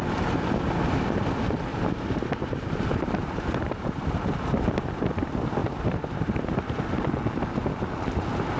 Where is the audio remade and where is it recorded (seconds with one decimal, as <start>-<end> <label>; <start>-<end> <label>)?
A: 0.0-1.7 recorded; 1.7-4.0 remade; 4.0-5.6 recorded; 5.6-6.7 remade; 6.7-8.6 recorded